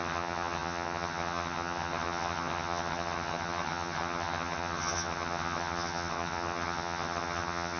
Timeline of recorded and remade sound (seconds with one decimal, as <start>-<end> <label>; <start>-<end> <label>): 0.0-7.8 remade

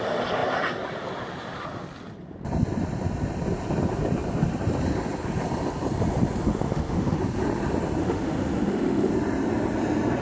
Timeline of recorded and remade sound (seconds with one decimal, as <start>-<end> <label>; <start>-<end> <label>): 0.0-6.5 recorded; 6.5-7.2 remade; 7.2-8.0 recorded; 8.0-9.1 remade; 9.1-10.2 recorded

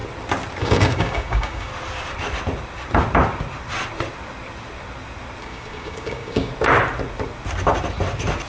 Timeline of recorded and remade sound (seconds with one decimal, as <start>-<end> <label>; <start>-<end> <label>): 0.0-0.6 recorded; 0.6-1.7 remade; 1.7-5.4 recorded; 5.4-6.5 remade; 6.5-8.5 recorded

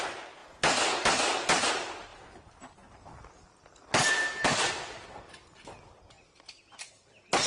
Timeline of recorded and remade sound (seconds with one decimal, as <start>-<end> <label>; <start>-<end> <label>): 0.0-7.5 recorded

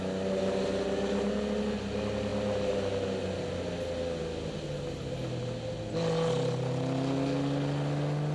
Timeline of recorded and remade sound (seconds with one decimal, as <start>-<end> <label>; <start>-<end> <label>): 0.0-8.3 recorded